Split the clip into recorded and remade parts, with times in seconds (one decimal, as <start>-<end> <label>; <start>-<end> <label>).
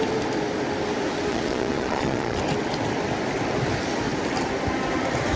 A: 0.0-1.3 recorded; 1.3-2.4 remade; 2.4-5.4 recorded